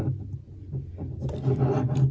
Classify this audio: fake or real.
real